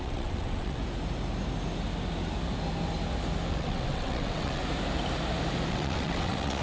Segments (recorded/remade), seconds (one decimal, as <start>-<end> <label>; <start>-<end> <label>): 0.0-0.8 remade; 0.8-3.5 recorded; 3.5-4.6 remade; 4.6-5.7 recorded; 5.7-6.6 remade

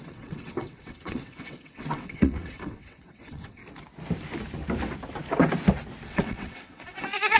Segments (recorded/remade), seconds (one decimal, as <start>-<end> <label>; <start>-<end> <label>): 0.0-3.6 remade; 3.6-6.1 recorded; 6.1-7.4 remade